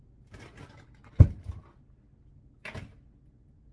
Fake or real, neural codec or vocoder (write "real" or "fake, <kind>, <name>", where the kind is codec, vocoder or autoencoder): real